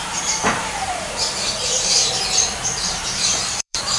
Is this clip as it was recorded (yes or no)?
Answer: no